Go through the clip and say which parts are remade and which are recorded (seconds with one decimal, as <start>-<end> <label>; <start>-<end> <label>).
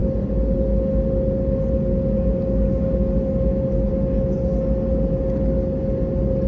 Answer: 0.0-6.5 recorded